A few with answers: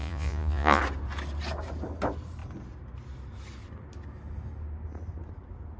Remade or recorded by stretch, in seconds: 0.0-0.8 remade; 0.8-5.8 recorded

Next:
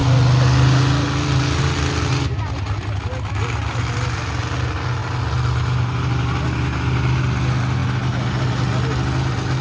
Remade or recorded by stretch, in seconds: 0.0-9.6 recorded

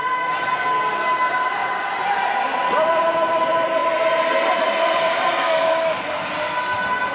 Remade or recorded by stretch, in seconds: 0.0-5.4 recorded; 5.4-6.0 remade; 6.0-7.1 recorded

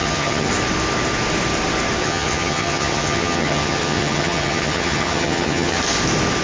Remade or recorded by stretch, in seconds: 0.0-0.5 remade; 0.5-2.0 recorded; 2.0-5.8 remade; 5.8-6.4 recorded

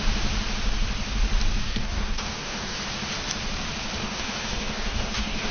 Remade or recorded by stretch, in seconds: 0.0-1.6 recorded; 1.6-2.8 remade; 2.8-4.0 recorded; 4.0-5.5 remade

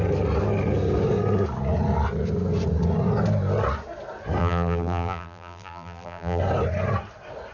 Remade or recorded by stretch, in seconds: 0.0-4.4 recorded; 4.4-6.4 remade; 6.4-7.5 recorded

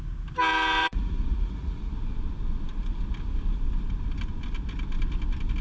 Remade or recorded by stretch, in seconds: 0.0-0.8 recorded; 0.8-1.9 remade; 1.9-5.6 recorded

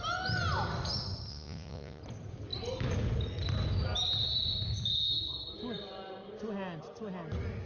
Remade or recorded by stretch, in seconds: 0.0-1.3 recorded; 1.3-2.0 remade; 2.0-7.7 recorded